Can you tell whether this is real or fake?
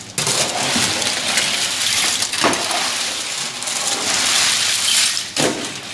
real